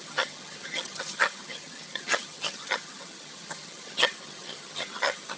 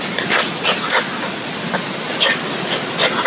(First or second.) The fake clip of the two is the first